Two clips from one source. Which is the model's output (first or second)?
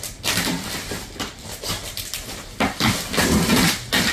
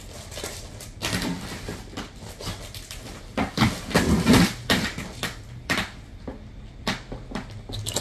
first